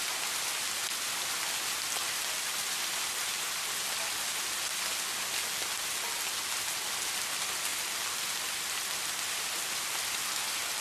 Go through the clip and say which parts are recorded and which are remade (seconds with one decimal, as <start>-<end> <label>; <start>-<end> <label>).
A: 0.0-10.8 recorded